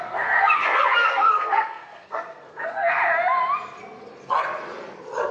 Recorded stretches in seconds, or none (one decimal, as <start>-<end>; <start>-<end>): 3.0-5.3